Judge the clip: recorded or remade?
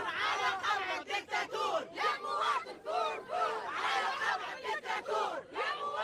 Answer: recorded